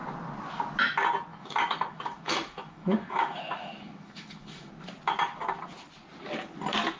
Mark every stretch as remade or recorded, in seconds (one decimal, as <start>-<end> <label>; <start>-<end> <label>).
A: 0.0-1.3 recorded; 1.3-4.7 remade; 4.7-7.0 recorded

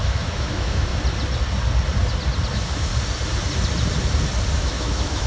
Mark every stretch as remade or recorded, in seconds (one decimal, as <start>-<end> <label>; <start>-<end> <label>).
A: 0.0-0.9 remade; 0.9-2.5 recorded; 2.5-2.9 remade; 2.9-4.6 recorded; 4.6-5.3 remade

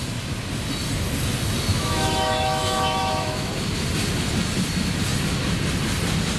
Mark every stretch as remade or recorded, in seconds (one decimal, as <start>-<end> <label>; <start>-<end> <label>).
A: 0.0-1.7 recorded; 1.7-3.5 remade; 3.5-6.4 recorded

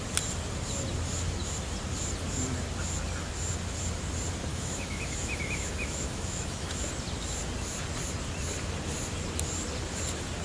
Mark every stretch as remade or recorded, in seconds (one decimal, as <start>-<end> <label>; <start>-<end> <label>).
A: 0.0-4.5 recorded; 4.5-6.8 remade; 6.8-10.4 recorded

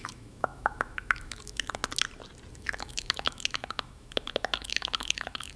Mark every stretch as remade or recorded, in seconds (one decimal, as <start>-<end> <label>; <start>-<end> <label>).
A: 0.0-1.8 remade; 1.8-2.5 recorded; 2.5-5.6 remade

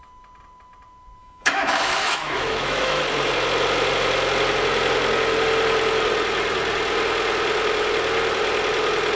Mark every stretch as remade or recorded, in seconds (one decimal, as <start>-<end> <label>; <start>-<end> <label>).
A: 0.0-1.2 recorded; 1.2-3.0 remade; 3.0-9.2 recorded

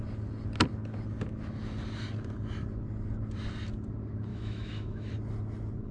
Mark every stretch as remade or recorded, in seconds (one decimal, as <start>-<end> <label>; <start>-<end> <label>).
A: 0.0-4.3 recorded; 4.3-5.1 remade; 5.1-5.9 recorded

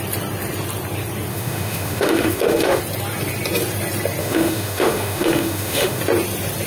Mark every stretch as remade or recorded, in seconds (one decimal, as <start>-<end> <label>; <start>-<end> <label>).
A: 0.0-1.3 recorded; 1.3-2.8 remade; 2.8-4.2 recorded; 4.2-6.0 remade; 6.0-6.7 recorded